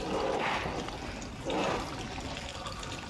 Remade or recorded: recorded